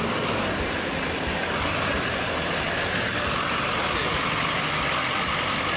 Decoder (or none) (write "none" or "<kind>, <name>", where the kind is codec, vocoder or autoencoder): none